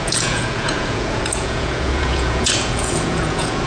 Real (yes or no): no